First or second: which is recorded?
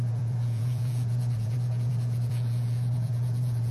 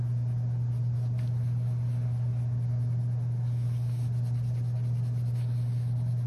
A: second